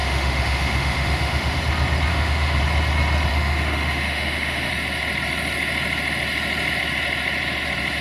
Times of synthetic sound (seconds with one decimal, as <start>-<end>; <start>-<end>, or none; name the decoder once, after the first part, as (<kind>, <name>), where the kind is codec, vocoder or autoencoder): 0.0-1.6 (autoencoder, DAC-VAE); 2.1-2.6; 3.3-4.7